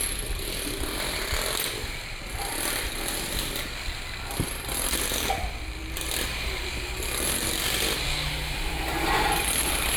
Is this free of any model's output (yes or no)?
no